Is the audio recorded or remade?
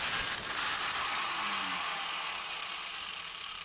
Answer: recorded